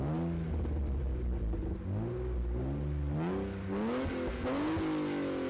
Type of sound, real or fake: real